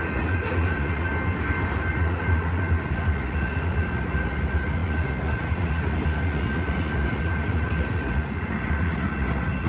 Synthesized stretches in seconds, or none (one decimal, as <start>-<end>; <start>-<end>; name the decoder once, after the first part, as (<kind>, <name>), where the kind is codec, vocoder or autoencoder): 0.0-1.1 (vocoder, Vocos); 1.9-9.7